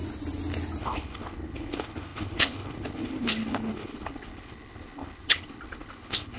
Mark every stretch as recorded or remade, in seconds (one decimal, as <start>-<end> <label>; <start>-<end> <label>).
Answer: 0.0-0.8 recorded; 0.8-6.4 remade